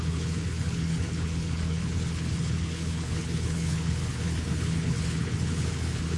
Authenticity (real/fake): fake